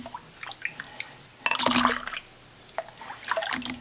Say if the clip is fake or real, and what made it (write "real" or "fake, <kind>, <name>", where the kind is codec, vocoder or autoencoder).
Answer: real